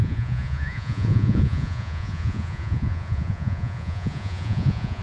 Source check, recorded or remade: remade